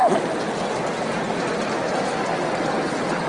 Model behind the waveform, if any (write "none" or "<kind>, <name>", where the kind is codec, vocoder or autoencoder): none